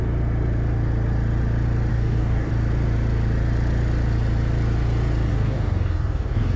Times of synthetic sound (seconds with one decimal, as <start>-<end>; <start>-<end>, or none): 1.9-2.5; 5.3-6.6